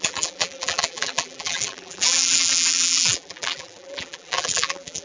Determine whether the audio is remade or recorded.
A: remade